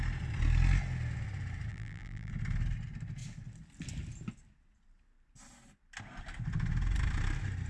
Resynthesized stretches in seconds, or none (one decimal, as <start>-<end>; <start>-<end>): 1.7-2.3